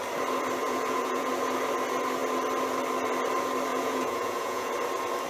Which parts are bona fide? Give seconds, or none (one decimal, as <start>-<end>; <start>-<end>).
0.0-0.6; 1.3-3.7; 4.7-5.3